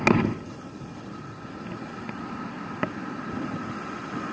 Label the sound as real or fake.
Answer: real